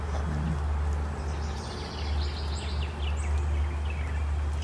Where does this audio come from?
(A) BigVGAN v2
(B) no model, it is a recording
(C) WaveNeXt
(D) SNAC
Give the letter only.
B